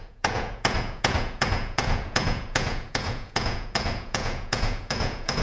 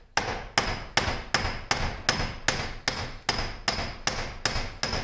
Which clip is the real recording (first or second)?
second